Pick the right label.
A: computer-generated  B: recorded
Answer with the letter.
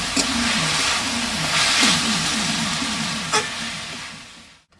B